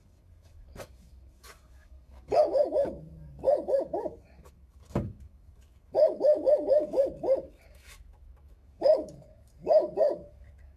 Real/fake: fake